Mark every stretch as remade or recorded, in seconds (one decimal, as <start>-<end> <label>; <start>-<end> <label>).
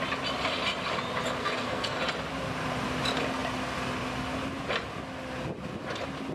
0.0-1.4 recorded; 1.4-2.0 remade; 2.0-6.3 recorded